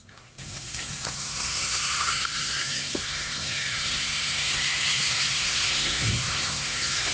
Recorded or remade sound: remade